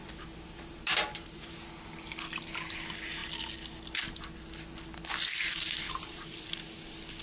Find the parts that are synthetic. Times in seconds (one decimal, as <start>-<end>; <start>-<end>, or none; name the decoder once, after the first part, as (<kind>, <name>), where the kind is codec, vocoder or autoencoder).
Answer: 0.0-1.8 (vocoder, BigVGAN v2); 5.5-6.5